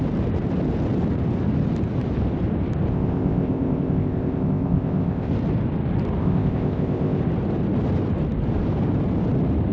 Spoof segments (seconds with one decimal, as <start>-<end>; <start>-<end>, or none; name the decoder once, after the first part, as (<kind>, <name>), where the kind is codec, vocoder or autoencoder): 2.9-5.3 (codec, ZipCodec); 6.2-7.2